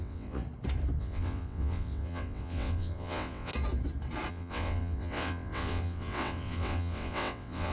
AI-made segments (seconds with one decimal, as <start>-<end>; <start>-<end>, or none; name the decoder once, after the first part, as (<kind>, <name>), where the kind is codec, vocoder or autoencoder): 0.0-0.4 (vocoder, WaveNeXt); 1.0-3.5; 4.3-7.7